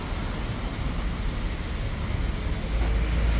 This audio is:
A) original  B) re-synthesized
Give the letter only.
A